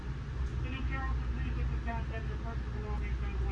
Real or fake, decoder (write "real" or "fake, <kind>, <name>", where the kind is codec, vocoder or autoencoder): real